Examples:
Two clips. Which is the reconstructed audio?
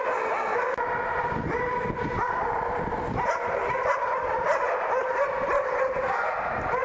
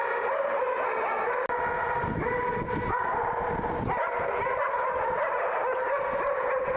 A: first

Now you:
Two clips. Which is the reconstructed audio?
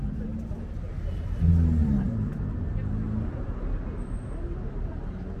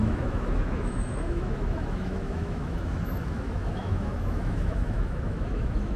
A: second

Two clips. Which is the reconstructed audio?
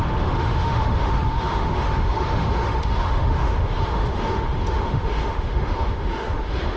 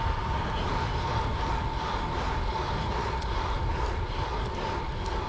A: first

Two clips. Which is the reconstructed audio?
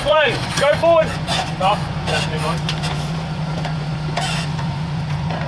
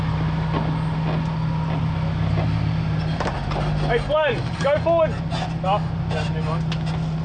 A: first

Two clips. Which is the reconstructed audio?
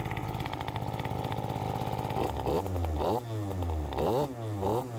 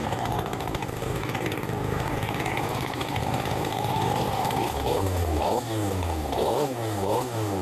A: second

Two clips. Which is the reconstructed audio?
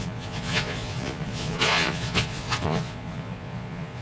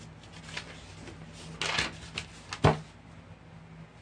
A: first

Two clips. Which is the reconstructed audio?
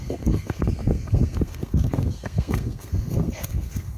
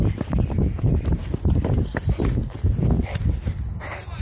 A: first